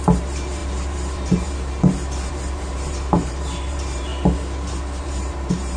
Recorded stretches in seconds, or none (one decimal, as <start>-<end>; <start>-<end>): 4.1-5.0